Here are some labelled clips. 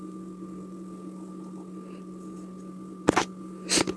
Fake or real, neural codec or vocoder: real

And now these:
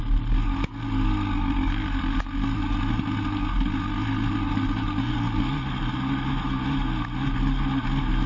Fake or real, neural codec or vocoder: real